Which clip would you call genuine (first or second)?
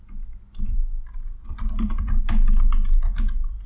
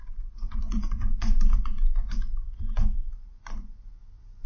first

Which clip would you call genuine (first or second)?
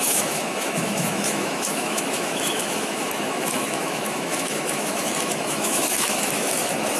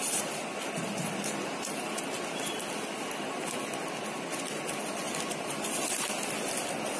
second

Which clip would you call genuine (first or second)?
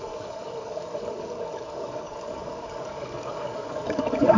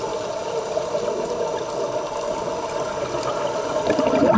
second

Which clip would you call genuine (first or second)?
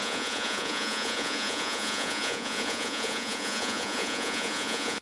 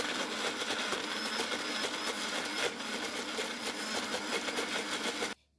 second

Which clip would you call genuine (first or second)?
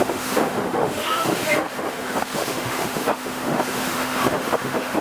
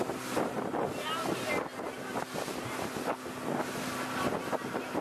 second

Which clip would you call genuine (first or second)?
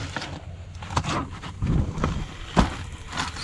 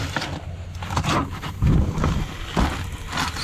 second